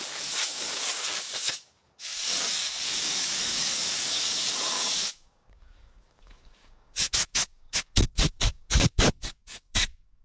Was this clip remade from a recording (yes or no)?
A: yes